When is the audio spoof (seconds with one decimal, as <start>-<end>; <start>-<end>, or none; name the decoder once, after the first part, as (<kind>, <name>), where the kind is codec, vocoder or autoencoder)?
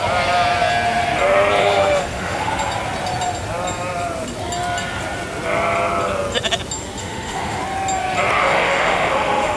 1.6-2.5 (autoencoder, DAC-VAE); 7.0-7.6; 8.4-9.6